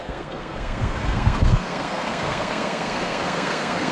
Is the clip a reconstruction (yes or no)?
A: yes